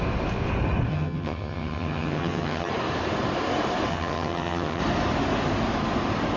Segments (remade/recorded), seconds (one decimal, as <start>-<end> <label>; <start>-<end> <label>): 0.0-0.9 recorded; 0.9-2.7 remade; 2.7-3.9 recorded; 3.9-4.8 remade; 4.8-6.4 recorded